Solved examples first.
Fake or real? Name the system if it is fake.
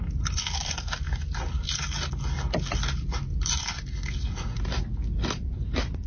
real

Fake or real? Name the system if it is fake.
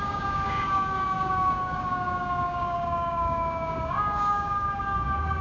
fake, codec, DAC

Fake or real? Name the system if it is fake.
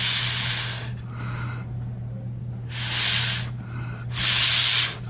real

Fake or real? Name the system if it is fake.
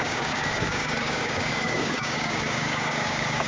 fake, codec, DAC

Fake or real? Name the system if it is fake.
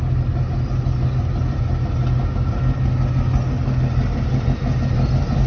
real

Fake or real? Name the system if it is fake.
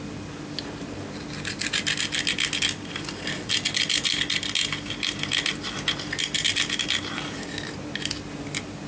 real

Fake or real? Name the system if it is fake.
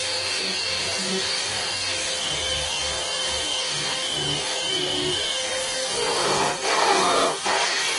fake, codec, DAC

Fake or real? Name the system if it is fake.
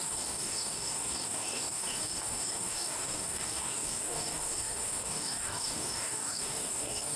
fake, codec, DAC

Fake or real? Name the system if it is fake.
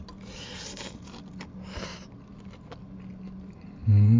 real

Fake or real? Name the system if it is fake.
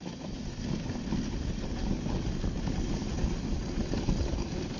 real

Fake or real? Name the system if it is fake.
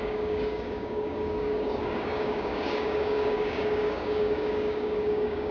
fake, codec, DAC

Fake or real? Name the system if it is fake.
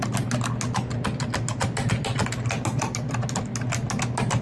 real